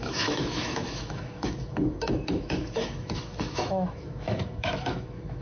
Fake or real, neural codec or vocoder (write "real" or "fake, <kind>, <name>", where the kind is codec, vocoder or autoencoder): fake, autoencoder, DAC-VAE